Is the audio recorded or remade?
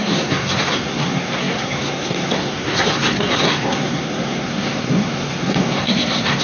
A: remade